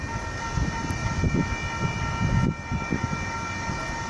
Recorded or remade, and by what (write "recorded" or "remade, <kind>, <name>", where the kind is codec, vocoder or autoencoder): recorded